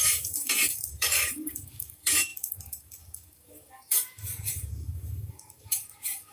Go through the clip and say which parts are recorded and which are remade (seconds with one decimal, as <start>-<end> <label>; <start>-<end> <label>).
0.0-6.3 remade

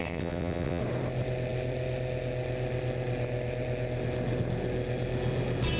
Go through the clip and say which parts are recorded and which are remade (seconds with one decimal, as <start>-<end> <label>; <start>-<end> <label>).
0.0-0.8 remade; 0.8-5.8 recorded